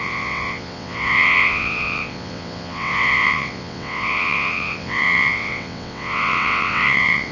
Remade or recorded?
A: remade